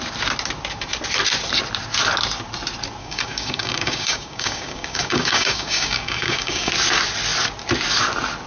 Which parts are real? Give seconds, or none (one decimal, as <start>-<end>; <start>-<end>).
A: 0.0-3.0; 6.7-8.5